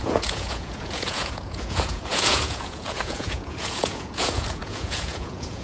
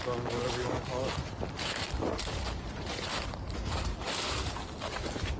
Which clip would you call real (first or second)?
second